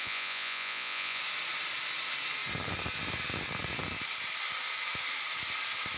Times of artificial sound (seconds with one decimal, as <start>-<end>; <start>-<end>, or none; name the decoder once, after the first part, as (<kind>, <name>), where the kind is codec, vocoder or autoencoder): 0.0-1.2 (vocoder, Vocos)